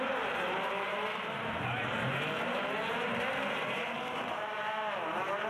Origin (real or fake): fake